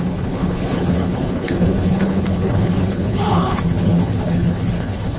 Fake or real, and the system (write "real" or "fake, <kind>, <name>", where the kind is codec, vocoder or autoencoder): fake, codec, HILCodec